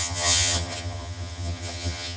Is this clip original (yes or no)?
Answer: no